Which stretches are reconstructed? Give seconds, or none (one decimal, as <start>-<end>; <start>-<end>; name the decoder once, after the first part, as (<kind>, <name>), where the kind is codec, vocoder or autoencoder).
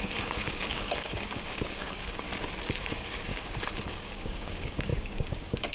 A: 0.0-2.3 (codec, DAC); 2.8-3.3; 3.9-5.7